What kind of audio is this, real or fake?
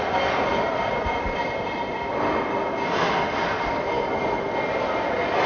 real